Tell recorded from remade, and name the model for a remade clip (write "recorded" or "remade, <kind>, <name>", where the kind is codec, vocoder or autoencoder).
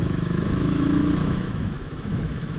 remade, autoencoder, DAC-VAE